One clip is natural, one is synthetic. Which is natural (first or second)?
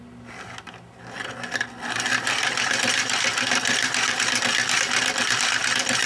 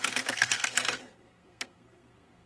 first